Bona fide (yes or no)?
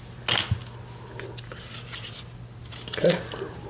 yes